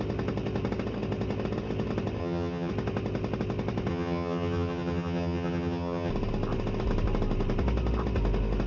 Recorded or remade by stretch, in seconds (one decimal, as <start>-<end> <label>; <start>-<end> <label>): 0.0-2.2 recorded; 2.2-2.7 remade; 2.7-3.9 recorded; 3.9-6.1 remade; 6.1-8.7 recorded